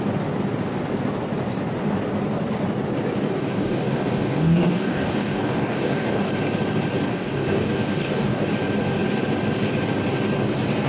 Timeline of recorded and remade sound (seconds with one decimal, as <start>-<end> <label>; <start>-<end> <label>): 0.0-3.4 recorded; 3.4-6.3 remade; 6.3-7.1 recorded; 7.1-8.5 remade; 8.5-10.9 recorded